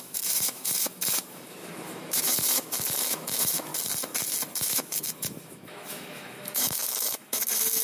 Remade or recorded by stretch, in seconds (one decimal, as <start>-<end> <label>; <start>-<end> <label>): 0.0-3.7 remade; 3.7-4.6 recorded; 4.6-7.8 remade